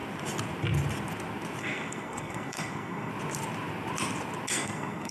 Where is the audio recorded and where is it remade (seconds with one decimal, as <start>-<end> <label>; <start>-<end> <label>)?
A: 0.0-1.6 recorded; 1.6-3.1 remade; 3.1-4.5 recorded; 4.5-5.1 remade